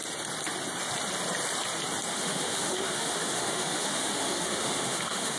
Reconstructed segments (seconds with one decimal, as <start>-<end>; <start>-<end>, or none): 2.1-5.4